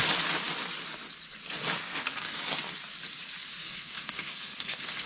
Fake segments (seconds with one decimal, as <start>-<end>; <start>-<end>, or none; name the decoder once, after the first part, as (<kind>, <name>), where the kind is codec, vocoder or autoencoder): 1.8-2.4 (codec, SNAC); 3.6-5.1